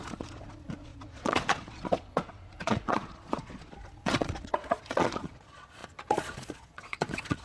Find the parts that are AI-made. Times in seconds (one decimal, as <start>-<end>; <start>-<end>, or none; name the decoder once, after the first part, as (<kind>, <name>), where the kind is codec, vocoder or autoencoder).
0.0-7.4 (vocoder, Vocos)